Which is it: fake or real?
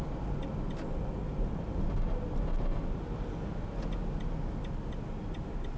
real